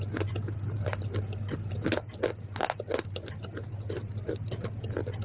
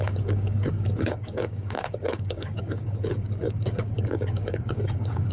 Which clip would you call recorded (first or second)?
first